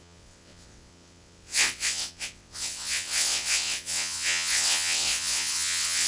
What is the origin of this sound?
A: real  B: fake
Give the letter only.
B